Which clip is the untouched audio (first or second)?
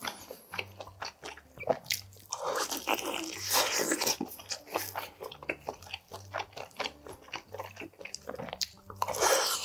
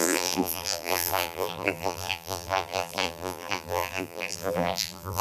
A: first